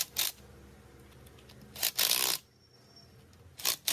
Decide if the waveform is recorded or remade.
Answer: recorded